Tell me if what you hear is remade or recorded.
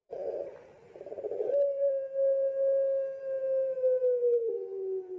recorded